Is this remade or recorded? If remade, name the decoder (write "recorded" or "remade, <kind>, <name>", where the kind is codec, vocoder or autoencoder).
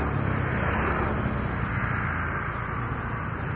recorded